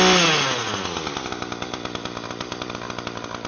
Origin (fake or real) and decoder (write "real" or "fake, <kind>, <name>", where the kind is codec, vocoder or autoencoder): real